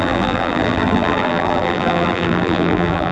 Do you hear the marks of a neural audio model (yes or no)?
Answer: yes